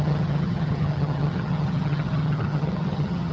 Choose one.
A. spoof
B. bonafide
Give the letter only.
A